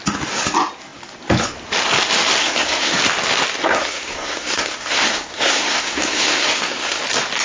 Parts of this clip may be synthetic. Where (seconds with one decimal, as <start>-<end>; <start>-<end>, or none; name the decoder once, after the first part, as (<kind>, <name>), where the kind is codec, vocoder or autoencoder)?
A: 2.4-3.0 (codec, SNAC); 3.6-7.0